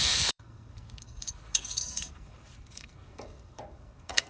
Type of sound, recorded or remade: remade